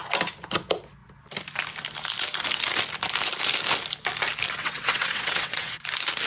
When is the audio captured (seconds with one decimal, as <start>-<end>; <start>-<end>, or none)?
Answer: 0.0-4.6; 5.8-6.3